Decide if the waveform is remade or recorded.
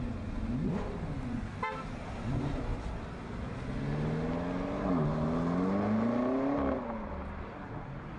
recorded